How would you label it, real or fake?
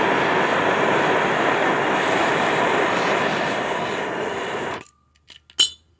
real